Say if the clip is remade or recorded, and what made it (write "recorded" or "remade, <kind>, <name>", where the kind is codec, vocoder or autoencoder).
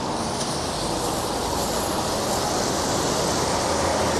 recorded